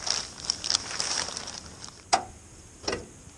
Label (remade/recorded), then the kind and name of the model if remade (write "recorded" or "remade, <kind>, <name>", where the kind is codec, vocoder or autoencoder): recorded